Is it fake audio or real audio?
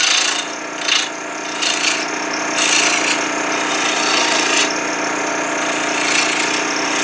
real